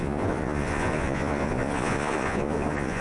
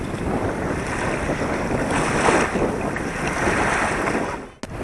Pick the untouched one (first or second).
second